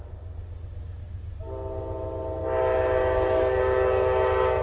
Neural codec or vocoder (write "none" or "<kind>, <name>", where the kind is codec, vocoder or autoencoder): none